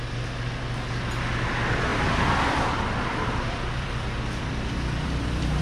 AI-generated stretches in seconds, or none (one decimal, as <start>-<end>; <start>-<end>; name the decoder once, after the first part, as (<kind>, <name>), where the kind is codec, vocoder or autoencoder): 1.9-5.6 (vocoder, BigVGAN v2)